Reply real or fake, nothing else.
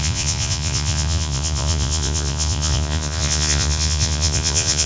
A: fake